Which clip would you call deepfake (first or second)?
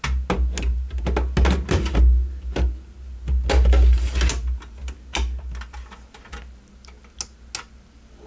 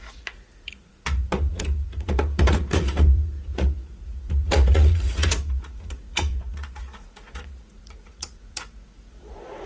second